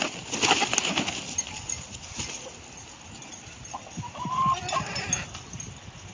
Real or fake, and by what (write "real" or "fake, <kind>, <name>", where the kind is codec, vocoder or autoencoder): real